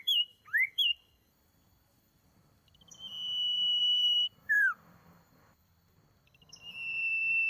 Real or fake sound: fake